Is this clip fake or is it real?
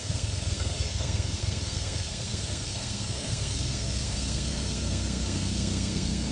fake